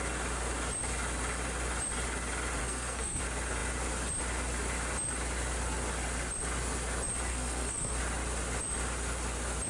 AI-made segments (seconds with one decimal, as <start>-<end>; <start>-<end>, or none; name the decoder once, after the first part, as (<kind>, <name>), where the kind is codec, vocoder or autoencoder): 2.6-3.2 (codec, SNAC); 7.3-8.0